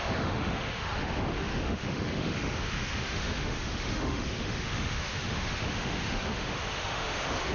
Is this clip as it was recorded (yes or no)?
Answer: no